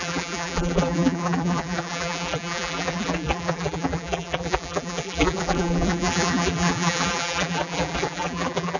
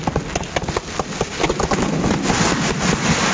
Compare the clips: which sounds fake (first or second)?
first